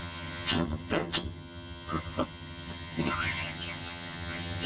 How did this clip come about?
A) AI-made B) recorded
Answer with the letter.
A